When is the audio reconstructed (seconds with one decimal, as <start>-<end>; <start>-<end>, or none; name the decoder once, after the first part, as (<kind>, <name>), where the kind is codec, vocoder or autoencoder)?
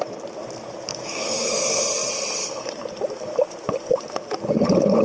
0.9-1.6 (codec, DAC)